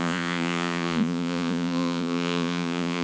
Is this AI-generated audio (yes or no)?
yes